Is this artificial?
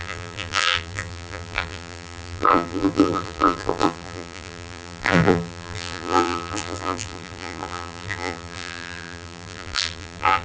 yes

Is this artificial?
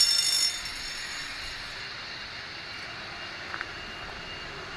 no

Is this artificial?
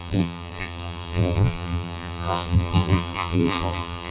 yes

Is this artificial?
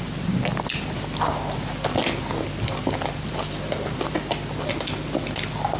no